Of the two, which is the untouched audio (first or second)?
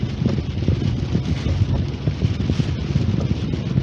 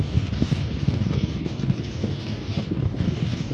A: first